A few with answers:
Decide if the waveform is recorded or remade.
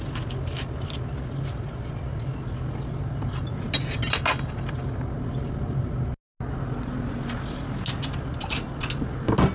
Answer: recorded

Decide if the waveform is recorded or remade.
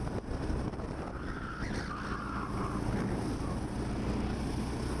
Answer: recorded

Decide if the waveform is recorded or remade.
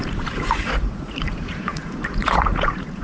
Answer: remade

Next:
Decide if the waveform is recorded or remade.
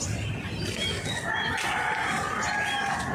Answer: recorded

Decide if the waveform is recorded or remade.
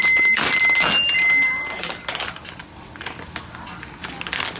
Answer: recorded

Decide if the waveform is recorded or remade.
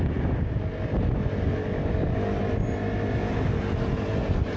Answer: recorded